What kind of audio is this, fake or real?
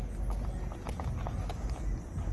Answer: real